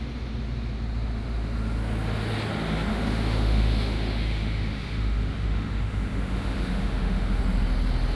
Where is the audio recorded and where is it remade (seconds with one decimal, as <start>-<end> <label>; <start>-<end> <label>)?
0.0-2.9 recorded; 2.9-7.4 remade; 7.4-8.1 recorded